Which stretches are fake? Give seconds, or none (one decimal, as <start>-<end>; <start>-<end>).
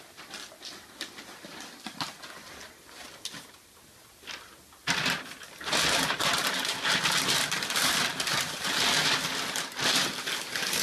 none